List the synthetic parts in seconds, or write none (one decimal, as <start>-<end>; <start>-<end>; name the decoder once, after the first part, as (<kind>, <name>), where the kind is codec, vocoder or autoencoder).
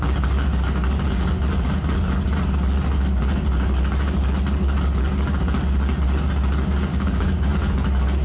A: 6.9-7.5 (codec, DAC)